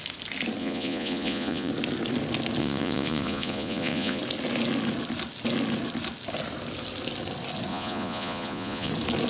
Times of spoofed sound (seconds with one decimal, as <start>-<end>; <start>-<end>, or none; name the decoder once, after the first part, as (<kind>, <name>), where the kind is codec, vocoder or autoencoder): 0.6-1.7 (vocoder, Vocos); 2.6-4.2; 7.7-8.9

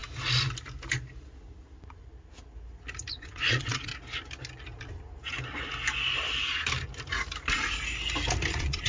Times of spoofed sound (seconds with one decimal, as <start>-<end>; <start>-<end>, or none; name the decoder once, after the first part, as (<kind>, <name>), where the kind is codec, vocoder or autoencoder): 3.1-3.9 (vocoder, Vocos); 8.5-8.9

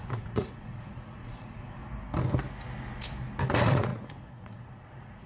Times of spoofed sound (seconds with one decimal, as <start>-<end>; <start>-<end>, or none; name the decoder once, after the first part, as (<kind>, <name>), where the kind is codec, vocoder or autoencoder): 0.0-1.8 (vocoder, Vocos); 3.4-5.3

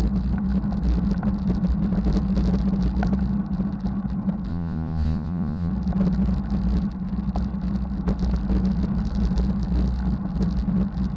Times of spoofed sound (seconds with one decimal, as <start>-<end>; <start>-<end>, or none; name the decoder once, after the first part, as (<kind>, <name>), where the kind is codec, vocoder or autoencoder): 4.5-5.7 (vocoder, Vocos)

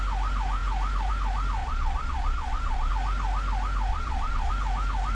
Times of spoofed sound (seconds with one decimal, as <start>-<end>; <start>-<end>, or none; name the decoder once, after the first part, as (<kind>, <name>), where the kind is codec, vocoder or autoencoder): 1.6-2.9 (vocoder, Vocos); 3.9-4.5